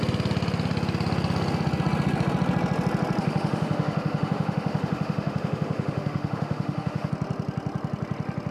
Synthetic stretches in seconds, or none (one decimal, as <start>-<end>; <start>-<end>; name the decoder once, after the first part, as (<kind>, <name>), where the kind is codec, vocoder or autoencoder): 3.2-7.1 (autoencoder, DAC-VAE)